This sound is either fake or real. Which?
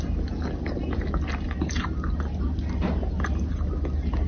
real